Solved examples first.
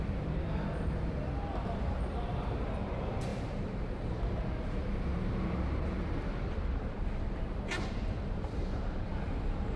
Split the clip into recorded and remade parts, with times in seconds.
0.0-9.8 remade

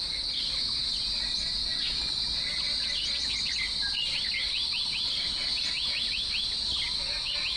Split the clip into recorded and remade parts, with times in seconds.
0.0-7.6 recorded